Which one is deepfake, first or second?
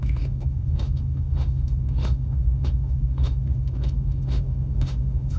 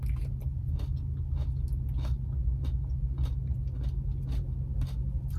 first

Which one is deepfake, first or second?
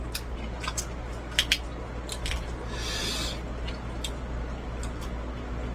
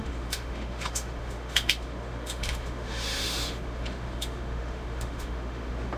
second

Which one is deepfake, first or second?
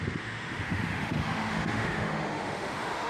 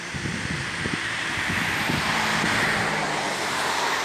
first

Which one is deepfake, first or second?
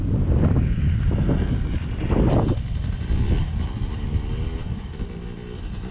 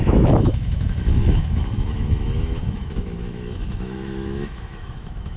second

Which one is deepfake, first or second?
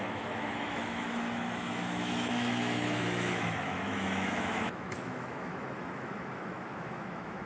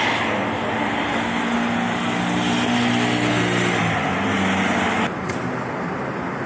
first